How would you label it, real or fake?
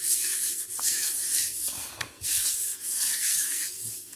fake